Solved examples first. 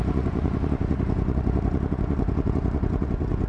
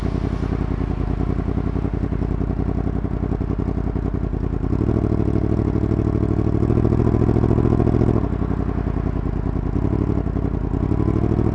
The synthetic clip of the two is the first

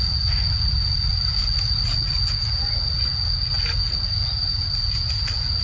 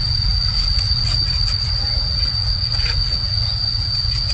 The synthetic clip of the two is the second